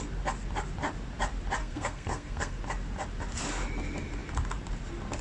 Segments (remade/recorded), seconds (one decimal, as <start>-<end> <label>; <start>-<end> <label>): 0.0-1.6 recorded; 1.6-2.6 remade; 2.6-5.2 recorded